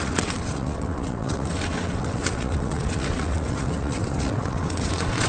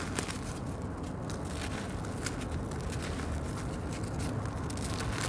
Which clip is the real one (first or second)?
second